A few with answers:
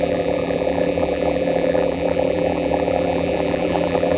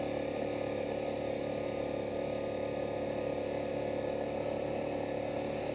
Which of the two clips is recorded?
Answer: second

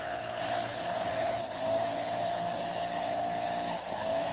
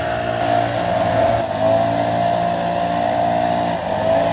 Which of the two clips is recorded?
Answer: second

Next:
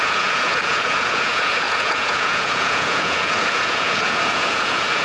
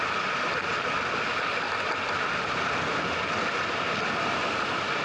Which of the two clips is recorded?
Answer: second